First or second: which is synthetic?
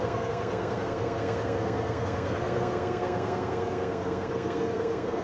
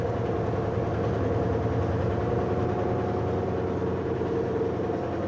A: first